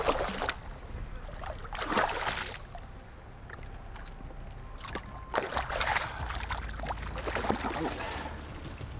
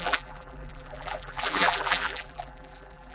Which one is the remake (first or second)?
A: second